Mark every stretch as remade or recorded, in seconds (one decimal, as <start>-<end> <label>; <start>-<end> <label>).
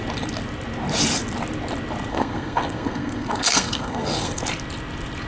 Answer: 0.0-2.1 recorded; 2.1-4.4 remade; 4.4-5.3 recorded